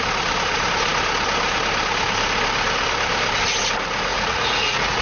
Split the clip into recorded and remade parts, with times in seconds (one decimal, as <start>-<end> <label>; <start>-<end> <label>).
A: 0.0-4.1 recorded; 4.1-5.0 remade